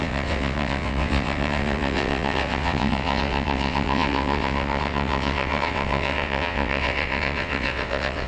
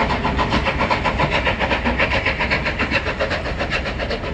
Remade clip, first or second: first